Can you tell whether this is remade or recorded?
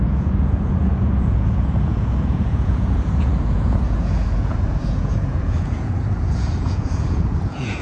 remade